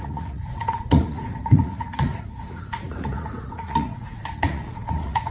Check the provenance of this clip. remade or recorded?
remade